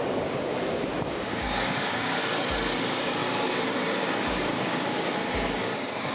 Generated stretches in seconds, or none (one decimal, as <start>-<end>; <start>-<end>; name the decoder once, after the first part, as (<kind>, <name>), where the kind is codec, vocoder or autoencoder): 0.0-2.2 (codec, DAC); 2.8-6.1